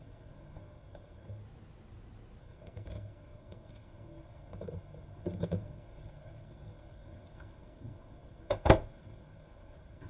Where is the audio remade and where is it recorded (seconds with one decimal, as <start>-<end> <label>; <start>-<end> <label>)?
0.0-1.4 remade; 1.4-2.4 recorded; 2.4-10.1 remade